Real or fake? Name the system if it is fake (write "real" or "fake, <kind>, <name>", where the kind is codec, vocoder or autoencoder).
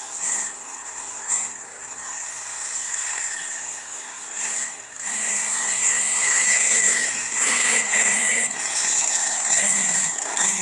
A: fake, codec, SNAC